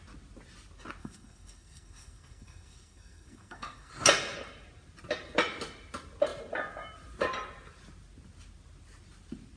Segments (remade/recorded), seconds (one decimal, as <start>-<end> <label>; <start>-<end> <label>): 0.0-1.0 recorded; 1.0-3.9 remade; 3.9-9.6 recorded

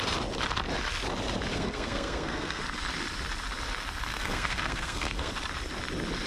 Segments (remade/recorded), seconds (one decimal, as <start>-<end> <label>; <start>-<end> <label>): 0.0-1.5 recorded; 1.5-2.6 remade; 2.6-4.1 recorded; 4.1-5.3 remade; 5.3-6.3 recorded

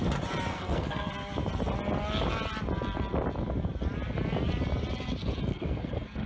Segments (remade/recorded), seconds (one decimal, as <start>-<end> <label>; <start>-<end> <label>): 0.0-0.5 recorded; 0.5-1.1 remade; 1.1-5.5 recorded; 5.5-6.3 remade